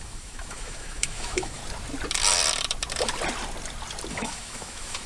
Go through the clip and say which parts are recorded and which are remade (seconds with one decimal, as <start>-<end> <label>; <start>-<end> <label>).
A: 0.0-1.6 remade; 1.6-4.1 recorded; 4.1-5.1 remade